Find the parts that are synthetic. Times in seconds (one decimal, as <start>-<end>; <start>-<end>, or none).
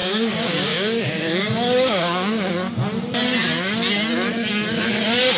0.0-2.5